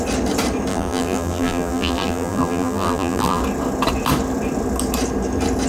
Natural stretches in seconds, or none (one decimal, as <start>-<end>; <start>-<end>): 0.0-0.7; 3.4-5.7